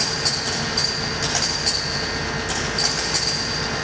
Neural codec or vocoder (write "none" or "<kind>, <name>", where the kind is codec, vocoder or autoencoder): none